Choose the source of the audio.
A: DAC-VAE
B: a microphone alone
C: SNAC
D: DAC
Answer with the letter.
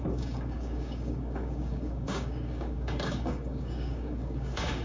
D